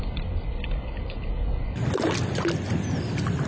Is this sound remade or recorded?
recorded